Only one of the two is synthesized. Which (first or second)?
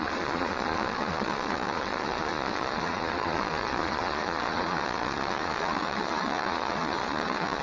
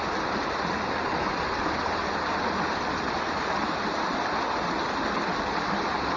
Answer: first